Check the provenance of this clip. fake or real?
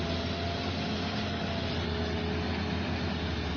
real